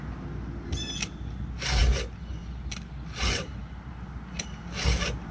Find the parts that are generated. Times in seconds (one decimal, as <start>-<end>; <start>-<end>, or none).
none